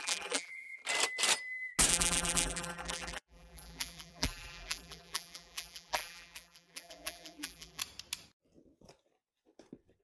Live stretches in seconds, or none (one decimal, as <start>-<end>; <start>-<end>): 0.8-1.9; 7.8-10.0